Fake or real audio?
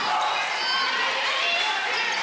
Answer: real